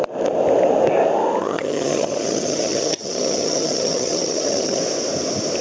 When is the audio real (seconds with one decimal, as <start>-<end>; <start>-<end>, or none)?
0.0-1.4; 4.8-5.6